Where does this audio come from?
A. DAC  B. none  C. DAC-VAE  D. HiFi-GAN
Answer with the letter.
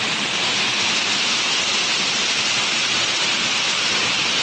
B